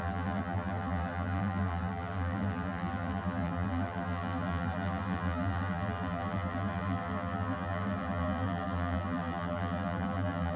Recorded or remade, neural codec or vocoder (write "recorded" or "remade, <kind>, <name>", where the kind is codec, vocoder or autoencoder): remade, vocoder, BigVGAN v2